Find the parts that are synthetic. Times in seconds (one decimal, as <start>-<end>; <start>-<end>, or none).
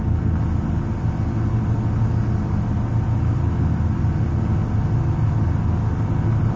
none